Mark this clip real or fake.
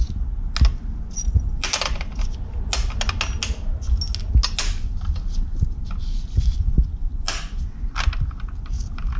real